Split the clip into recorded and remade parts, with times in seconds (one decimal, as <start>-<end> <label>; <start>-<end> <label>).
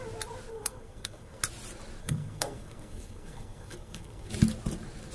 0.0-0.5 recorded; 0.5-1.4 remade; 1.4-2.0 recorded; 2.0-4.3 remade; 4.3-5.1 recorded